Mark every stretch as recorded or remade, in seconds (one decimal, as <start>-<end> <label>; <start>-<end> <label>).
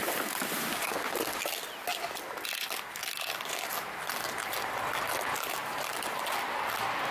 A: 0.0-7.1 recorded